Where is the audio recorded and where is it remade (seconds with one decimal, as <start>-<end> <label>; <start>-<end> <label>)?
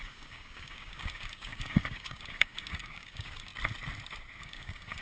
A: 0.0-3.5 remade; 3.5-4.4 recorded; 4.4-5.0 remade